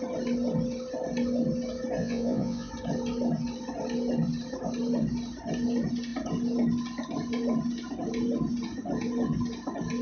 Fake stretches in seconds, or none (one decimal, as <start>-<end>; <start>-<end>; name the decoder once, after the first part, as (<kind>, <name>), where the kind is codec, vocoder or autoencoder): 2.0-2.7 (vocoder, Vocos)